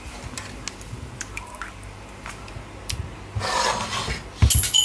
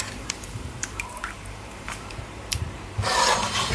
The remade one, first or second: second